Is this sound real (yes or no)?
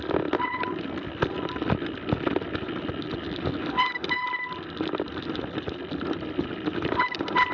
yes